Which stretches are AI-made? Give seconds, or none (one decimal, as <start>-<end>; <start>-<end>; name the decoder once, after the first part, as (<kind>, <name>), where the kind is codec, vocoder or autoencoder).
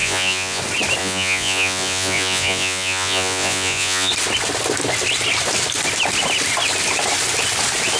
0.0-0.6 (vocoder, Vocos); 1.0-4.1